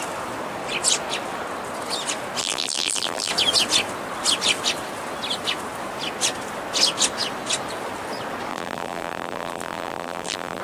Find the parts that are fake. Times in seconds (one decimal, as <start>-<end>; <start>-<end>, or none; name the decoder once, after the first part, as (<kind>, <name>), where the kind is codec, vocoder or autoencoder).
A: 2.4-3.3 (vocoder, BigVGAN v2); 8.5-10.6